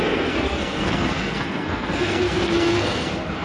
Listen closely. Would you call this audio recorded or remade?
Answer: remade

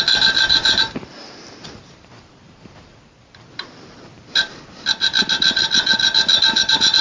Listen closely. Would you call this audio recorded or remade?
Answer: recorded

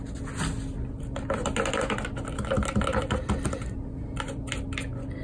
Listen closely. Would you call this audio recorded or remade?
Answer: recorded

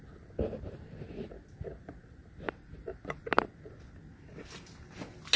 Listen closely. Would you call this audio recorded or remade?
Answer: recorded